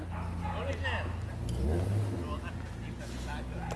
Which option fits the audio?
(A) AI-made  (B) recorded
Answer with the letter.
B